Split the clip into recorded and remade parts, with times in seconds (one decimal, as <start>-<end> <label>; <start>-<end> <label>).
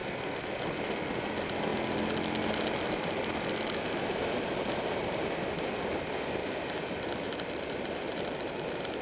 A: 0.0-6.4 recorded; 6.4-8.6 remade; 8.6-9.0 recorded